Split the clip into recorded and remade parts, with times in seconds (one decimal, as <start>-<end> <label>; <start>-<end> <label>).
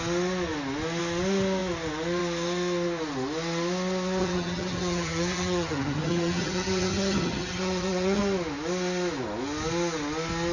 0.0-4.2 recorded; 4.2-8.2 remade; 8.2-10.5 recorded